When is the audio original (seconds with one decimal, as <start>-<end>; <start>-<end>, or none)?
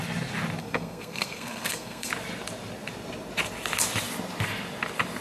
0.0-0.6; 2.1-5.2